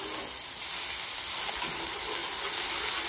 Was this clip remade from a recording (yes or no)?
no